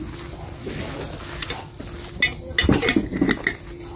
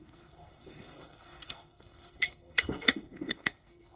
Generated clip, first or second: second